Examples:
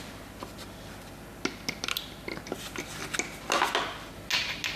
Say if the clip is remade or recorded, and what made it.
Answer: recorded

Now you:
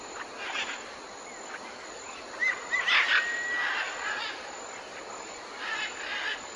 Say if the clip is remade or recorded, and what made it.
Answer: recorded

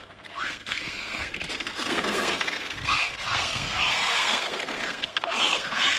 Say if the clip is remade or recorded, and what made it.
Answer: remade, codec, SNAC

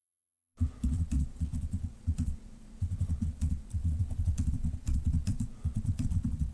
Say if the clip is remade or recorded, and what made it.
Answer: remade, vocoder, Vocos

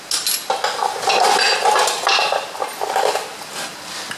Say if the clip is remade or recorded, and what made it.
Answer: recorded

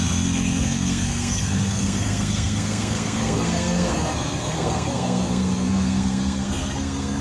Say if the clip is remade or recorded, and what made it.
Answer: remade, codec, SNAC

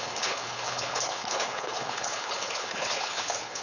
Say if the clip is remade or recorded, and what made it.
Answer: remade, codec, HILCodec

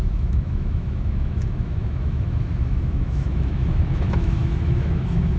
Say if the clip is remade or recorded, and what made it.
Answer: remade, autoencoder, DAC-VAE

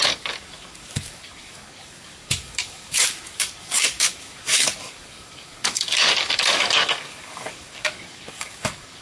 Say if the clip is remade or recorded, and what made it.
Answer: remade, codec, DAC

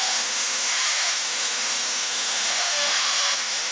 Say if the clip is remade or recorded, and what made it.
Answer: remade, autoencoder, DAC-VAE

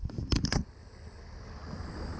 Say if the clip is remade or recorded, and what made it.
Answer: recorded